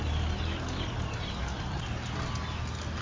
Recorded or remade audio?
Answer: recorded